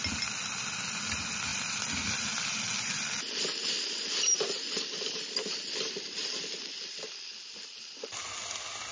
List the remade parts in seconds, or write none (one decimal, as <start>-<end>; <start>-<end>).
1.5-2.1; 3.6-7.3